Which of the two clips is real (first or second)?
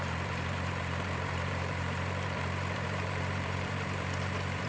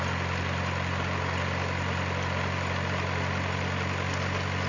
second